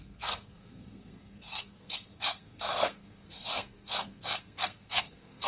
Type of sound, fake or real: fake